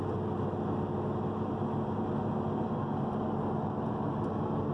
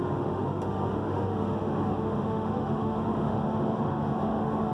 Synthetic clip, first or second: second